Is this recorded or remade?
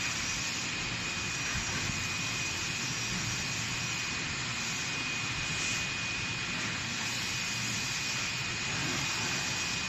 recorded